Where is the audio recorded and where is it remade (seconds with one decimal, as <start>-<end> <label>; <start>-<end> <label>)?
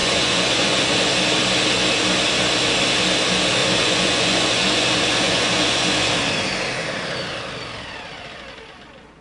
0.0-1.1 remade; 1.1-3.6 recorded; 3.6-6.1 remade; 6.1-9.2 recorded